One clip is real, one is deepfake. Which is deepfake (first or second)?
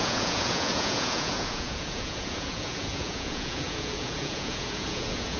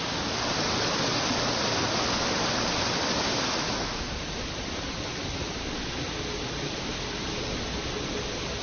first